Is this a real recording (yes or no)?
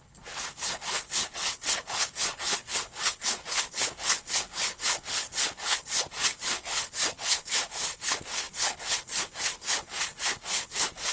no